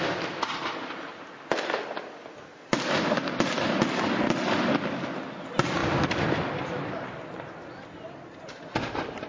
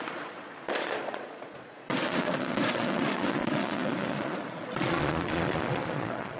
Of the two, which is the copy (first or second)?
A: second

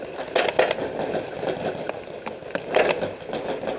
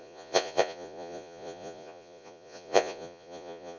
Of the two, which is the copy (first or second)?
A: second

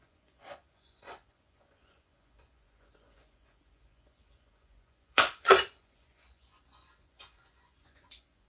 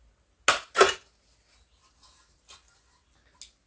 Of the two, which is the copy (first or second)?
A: first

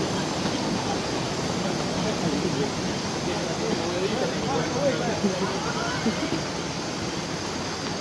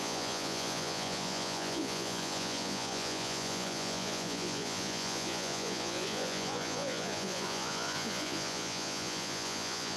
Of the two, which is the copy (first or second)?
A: second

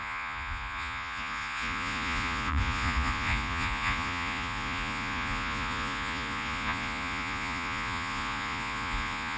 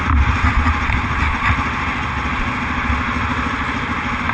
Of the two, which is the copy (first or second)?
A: first